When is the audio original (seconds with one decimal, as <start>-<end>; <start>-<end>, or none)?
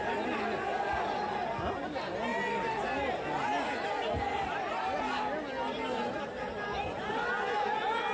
0.0-8.1